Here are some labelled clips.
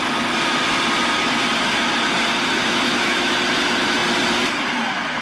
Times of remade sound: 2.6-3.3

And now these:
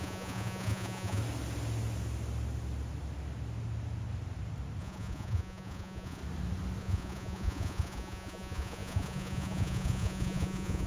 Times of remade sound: 0.0-1.2; 4.8-6.2; 6.8-10.9